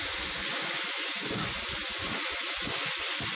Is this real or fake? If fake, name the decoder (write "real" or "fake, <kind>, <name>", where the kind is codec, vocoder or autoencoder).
fake, vocoder, Vocos